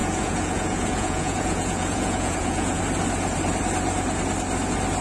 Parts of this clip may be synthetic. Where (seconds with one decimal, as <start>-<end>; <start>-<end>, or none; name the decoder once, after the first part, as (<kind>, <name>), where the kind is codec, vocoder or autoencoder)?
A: 0.0-2.8 (vocoder, Vocos)